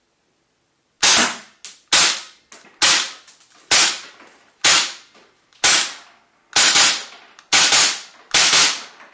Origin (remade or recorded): recorded